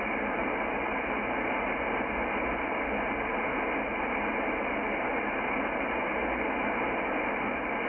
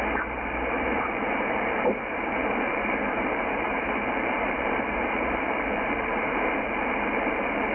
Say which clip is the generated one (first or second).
second